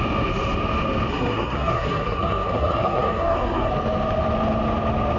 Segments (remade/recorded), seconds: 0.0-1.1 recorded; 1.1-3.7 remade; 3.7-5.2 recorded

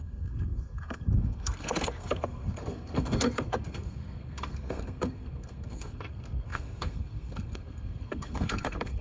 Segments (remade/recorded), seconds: 0.0-9.0 remade